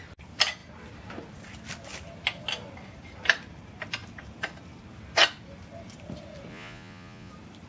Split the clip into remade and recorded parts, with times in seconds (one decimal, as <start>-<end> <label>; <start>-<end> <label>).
0.0-6.5 recorded; 6.5-7.3 remade; 7.3-7.7 recorded